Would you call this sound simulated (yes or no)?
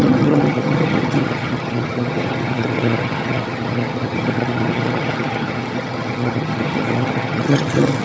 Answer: yes